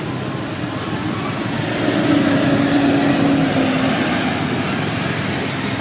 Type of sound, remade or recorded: recorded